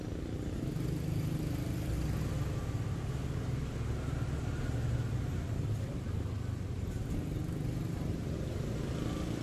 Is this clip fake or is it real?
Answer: real